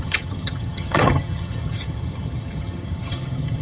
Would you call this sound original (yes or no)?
no